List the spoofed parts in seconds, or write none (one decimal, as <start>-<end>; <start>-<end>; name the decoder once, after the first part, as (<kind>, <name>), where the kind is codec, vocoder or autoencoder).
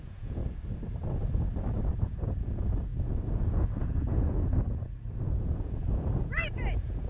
0.0-0.4 (vocoder, Vocos); 1.9-7.1